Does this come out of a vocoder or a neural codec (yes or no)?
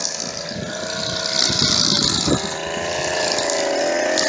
no